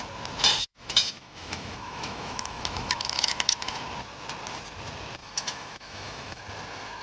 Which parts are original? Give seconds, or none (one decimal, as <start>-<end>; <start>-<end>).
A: 0.0-0.7; 3.8-5.2; 6.4-7.0